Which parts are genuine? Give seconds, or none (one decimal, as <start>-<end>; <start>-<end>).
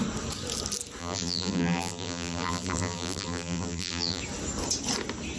0.0-1.0; 4.2-5.4